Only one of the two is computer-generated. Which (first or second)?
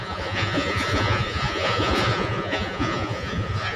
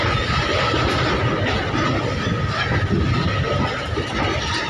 first